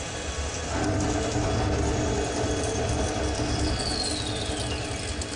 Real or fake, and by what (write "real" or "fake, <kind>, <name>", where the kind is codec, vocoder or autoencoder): real